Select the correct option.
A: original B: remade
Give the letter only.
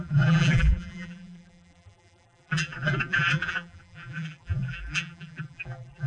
B